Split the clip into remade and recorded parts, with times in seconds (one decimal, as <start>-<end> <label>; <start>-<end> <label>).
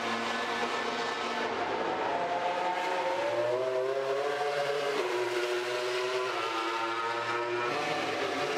0.0-8.6 recorded